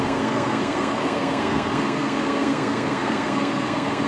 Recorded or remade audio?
remade